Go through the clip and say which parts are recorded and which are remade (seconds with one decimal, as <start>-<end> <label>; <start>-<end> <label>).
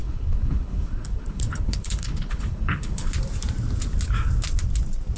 0.0-3.1 remade; 3.1-5.2 recorded